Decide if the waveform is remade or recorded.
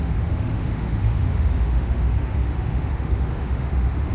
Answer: remade